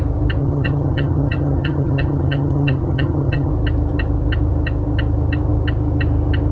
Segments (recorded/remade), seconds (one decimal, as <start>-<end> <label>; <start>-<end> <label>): 0.0-0.4 recorded; 0.4-3.5 remade; 3.5-6.5 recorded